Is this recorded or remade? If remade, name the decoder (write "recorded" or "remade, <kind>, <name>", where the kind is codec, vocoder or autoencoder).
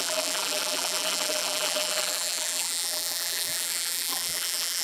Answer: remade, vocoder, BigVGAN v2